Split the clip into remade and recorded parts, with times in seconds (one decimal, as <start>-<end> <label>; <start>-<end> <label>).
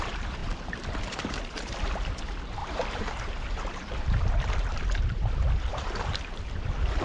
0.0-2.6 recorded; 2.6-4.4 remade; 4.4-5.7 recorded; 5.7-6.3 remade; 6.3-7.0 recorded